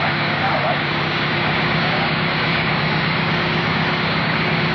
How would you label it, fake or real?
fake